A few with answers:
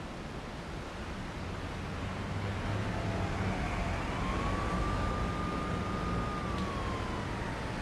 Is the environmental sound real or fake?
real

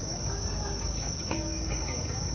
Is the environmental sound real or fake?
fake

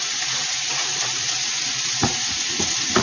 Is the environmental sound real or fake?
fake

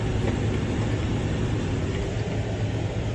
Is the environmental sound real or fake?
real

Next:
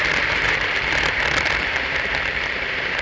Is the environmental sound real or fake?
fake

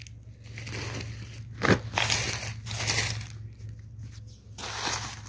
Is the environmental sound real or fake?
real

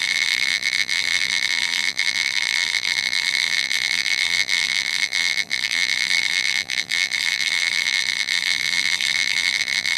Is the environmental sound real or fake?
fake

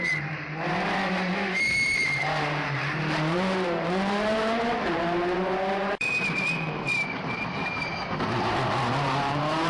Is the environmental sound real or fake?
fake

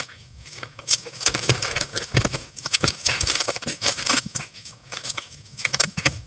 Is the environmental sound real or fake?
fake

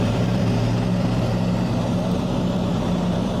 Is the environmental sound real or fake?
fake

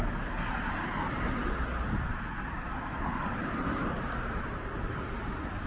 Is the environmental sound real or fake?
real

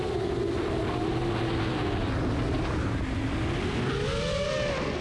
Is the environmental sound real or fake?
real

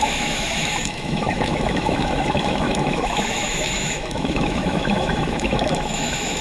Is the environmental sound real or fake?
fake